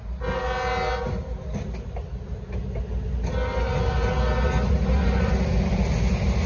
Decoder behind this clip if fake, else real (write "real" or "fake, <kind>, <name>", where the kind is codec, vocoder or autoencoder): real